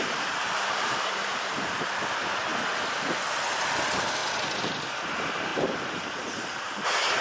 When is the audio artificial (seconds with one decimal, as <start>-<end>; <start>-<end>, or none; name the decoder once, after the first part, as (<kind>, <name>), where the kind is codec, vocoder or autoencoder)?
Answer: 0.0-2.5 (vocoder, BigVGAN v2); 3.8-4.2; 4.9-7.2